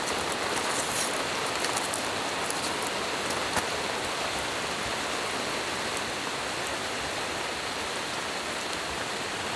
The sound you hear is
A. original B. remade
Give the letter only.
A